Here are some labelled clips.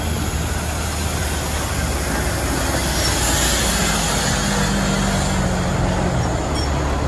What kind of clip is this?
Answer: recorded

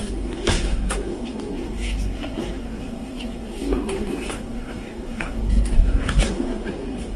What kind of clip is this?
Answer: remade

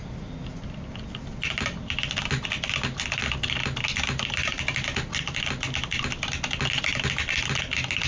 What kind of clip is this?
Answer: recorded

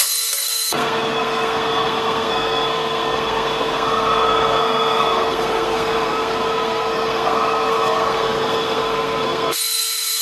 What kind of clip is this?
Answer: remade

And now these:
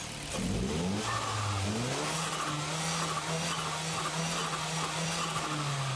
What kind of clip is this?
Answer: recorded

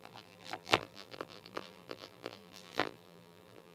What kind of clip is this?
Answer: remade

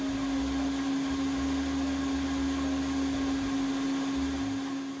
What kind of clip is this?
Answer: recorded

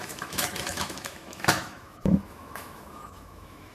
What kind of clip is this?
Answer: remade